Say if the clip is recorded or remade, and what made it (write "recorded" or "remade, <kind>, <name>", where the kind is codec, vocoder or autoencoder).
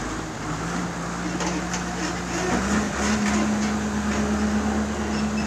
recorded